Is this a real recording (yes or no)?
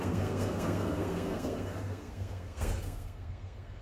no